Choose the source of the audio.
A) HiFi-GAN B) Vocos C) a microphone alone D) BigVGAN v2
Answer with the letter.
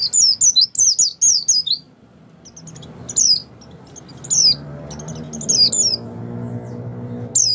C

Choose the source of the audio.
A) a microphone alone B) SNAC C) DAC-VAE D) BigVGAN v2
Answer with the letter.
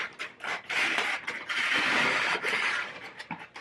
D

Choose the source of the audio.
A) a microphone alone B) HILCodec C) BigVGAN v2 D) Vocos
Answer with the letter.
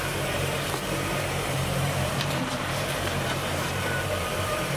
C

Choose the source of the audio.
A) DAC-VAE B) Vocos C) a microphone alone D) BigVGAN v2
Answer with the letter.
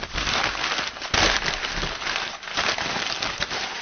C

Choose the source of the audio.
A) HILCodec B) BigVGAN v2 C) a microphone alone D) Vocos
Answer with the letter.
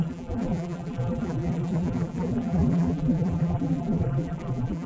B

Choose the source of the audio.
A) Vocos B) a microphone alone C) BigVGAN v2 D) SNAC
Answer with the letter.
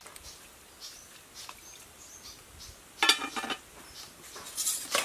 B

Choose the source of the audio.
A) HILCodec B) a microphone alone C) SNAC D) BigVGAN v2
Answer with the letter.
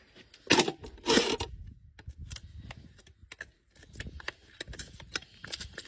B